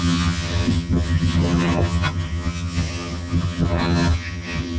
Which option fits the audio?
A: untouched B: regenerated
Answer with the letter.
B